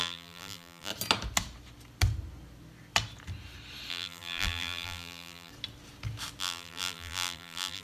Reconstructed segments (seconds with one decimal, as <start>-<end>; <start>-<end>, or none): 0.0-0.9; 3.9-5.5; 6.4-7.8